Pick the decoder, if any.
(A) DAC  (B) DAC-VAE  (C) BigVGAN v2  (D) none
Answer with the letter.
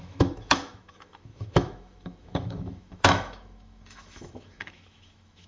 B